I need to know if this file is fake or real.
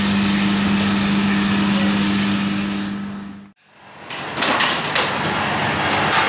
real